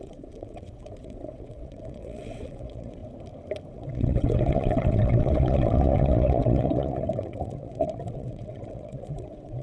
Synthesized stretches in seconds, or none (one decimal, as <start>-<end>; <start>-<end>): 0.0-3.0; 3.7-9.6